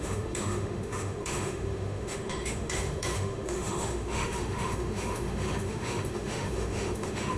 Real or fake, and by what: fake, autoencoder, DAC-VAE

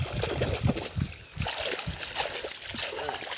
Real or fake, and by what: real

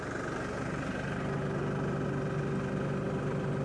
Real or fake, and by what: real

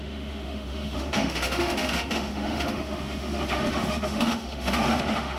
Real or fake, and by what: fake, autoencoder, DAC-VAE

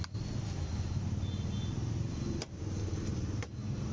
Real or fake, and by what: real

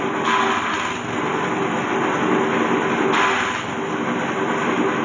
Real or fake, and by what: real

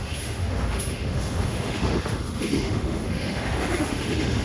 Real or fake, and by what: fake, autoencoder, DAC-VAE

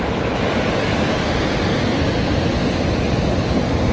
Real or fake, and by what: real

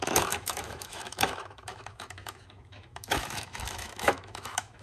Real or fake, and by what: fake, autoencoder, DAC-VAE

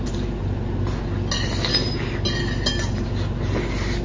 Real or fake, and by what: real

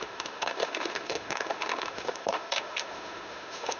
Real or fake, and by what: fake, autoencoder, DAC-VAE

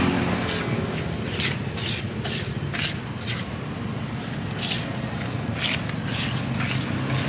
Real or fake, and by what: real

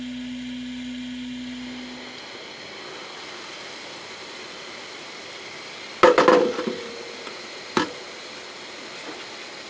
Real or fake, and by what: real